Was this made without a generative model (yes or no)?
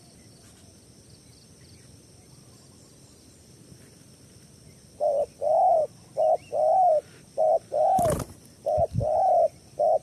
yes